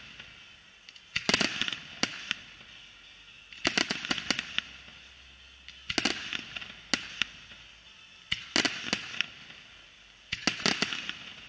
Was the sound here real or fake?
real